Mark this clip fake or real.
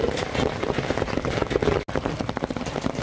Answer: real